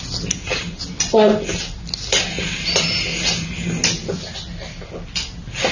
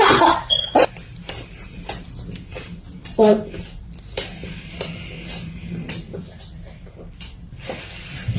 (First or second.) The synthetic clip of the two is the second